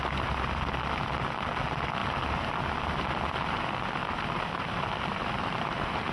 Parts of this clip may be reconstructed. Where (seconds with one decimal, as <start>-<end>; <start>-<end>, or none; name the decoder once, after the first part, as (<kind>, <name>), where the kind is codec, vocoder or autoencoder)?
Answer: 4.0-6.1 (vocoder, BigVGAN v2)